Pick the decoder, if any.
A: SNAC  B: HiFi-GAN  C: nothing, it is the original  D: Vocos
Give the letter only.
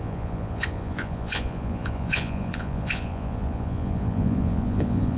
D